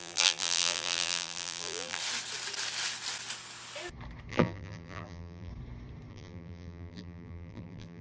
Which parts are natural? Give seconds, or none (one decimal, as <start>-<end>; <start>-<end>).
2.0-4.3; 5.5-6.1